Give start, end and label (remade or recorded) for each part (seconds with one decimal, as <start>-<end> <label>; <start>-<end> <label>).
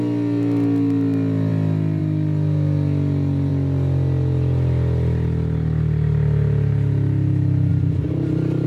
0.0-8.7 recorded